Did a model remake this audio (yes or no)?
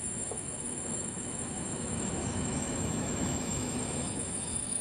yes